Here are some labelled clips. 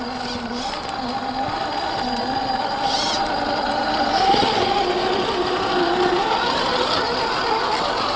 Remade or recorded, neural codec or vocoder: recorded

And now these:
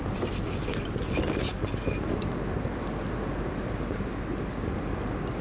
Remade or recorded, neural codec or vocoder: recorded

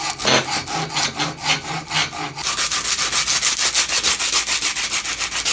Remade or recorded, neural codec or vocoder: recorded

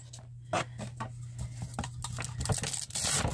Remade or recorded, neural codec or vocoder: recorded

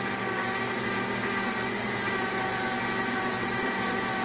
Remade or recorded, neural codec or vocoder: recorded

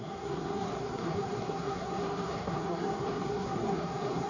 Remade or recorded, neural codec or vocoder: remade, codec, SNAC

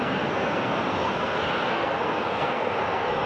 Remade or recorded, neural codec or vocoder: remade, codec, SNAC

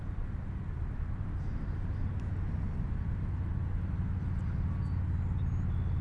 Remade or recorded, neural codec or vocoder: recorded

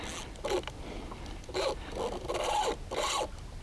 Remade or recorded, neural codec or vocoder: recorded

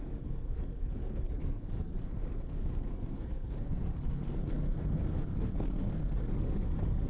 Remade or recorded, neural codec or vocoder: remade, codec, SNAC